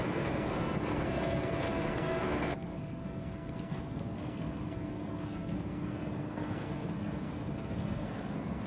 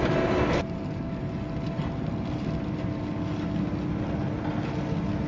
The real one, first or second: second